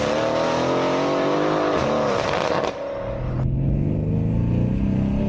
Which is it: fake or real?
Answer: real